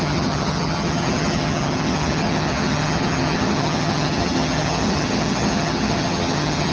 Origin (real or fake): fake